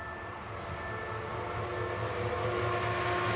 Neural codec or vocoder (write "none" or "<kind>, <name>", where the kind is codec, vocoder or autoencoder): none